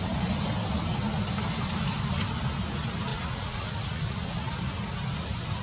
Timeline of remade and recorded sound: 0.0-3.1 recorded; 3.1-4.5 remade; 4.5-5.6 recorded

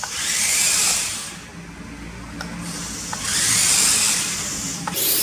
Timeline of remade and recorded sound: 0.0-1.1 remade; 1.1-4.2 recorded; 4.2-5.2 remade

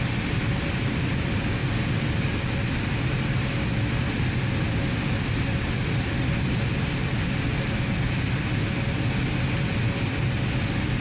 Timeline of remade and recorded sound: 0.0-11.0 recorded

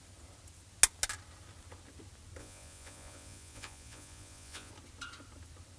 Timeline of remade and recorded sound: 0.0-2.4 recorded; 2.4-4.7 remade; 4.7-5.8 recorded

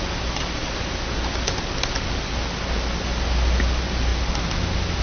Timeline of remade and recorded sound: 0.0-5.0 recorded

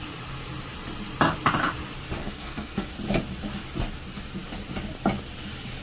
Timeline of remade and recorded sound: 0.0-2.2 recorded; 2.2-2.9 remade; 2.9-5.8 recorded

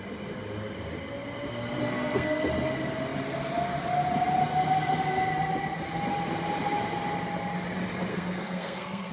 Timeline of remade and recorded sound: 0.0-1.8 recorded; 1.8-2.4 remade; 2.4-8.1 recorded; 8.1-9.1 remade

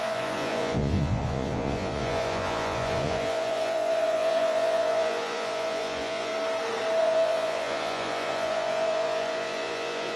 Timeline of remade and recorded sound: 0.0-6.3 remade; 6.3-7.0 recorded; 7.0-10.2 remade